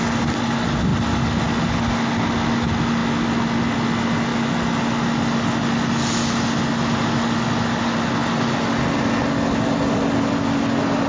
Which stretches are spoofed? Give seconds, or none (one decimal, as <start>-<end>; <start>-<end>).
none